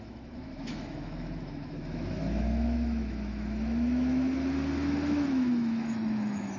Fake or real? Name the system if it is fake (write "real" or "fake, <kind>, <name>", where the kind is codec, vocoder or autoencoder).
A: fake, autoencoder, DAC-VAE